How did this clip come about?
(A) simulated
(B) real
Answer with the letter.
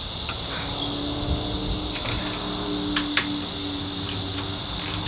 B